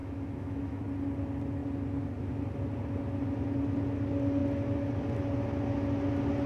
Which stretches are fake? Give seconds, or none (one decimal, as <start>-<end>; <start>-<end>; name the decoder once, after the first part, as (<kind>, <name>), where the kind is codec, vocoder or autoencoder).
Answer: 0.0-0.8 (autoencoder, DAC-VAE)